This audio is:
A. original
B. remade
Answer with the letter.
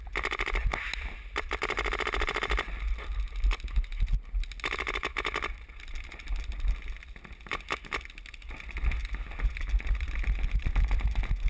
A